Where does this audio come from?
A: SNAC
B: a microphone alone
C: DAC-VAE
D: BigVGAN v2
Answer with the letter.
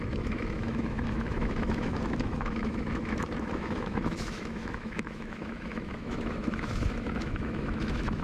C